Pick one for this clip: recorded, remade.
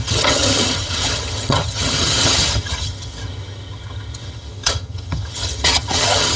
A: remade